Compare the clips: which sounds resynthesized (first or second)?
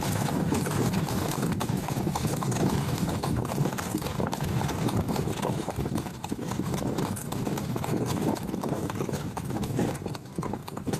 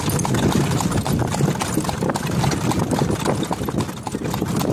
first